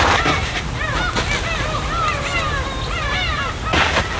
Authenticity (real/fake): real